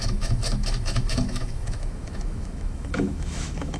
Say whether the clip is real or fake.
fake